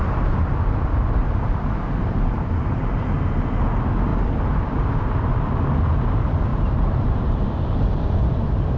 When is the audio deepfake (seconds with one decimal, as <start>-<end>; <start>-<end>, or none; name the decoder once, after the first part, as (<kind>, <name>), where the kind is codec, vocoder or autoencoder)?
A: 1.2-3.1 (vocoder, BigVGAN v2); 6.5-7.2